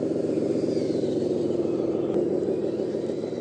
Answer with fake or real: fake